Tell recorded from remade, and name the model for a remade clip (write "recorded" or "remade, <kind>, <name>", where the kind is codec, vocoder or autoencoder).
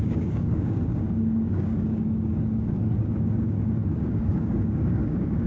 remade, codec, DAC